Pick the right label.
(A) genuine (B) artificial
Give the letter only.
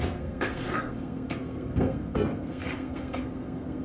B